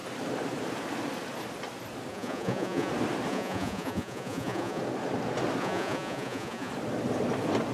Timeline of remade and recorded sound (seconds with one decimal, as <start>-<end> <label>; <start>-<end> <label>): 0.0-2.1 recorded; 2.1-2.9 remade; 2.9-3.3 recorded; 3.3-4.8 remade; 4.8-5.6 recorded; 5.6-6.7 remade; 6.7-7.7 recorded